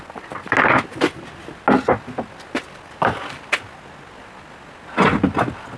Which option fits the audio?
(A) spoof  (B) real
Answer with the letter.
B